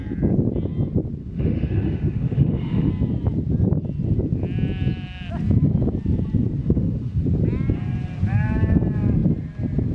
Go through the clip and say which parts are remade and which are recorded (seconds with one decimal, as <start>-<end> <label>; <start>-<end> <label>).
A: 0.0-1.2 recorded; 1.2-2.9 remade; 2.9-6.6 recorded; 6.6-7.2 remade; 7.2-9.9 recorded